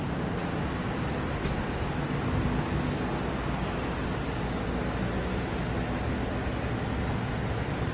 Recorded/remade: recorded